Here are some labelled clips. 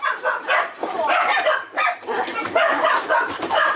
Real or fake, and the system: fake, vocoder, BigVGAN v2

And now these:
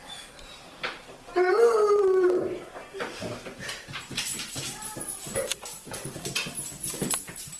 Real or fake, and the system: fake, vocoder, BigVGAN v2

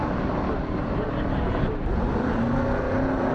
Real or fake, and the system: real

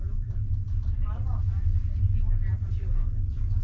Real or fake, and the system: real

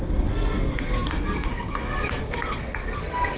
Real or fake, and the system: fake, codec, SNAC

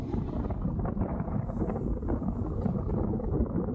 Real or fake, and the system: fake, vocoder, BigVGAN v2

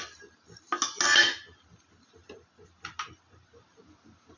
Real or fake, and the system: real